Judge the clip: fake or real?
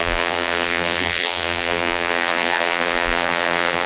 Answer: fake